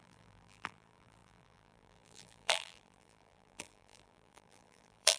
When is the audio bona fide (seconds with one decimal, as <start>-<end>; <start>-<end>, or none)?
none